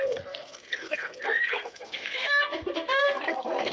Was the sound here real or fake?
fake